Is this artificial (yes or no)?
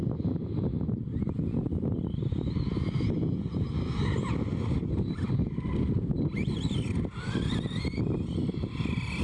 no